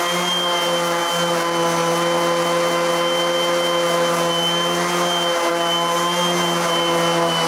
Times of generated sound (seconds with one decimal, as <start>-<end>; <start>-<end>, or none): none